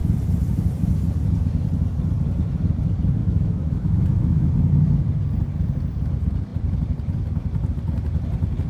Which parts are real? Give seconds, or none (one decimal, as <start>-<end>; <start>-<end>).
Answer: 0.0-3.2; 4.5-8.7